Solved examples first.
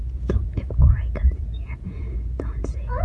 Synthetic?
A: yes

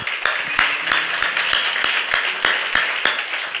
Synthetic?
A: no